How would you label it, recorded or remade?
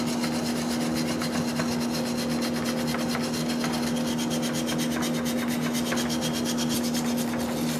recorded